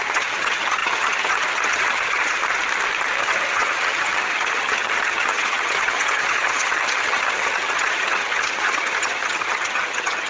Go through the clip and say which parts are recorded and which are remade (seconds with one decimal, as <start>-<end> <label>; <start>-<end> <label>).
0.0-2.4 remade; 2.4-3.2 recorded; 3.2-10.3 remade